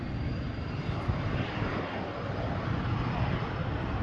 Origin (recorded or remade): recorded